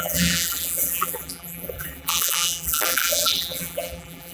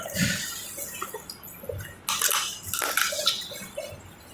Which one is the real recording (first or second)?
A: second